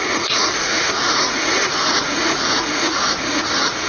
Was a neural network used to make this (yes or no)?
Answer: yes